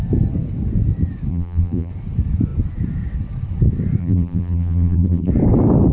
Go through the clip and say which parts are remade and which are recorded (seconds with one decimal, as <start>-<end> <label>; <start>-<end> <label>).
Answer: 0.0-1.3 recorded; 1.3-1.9 remade; 1.9-4.0 recorded; 4.0-5.3 remade; 5.3-5.9 recorded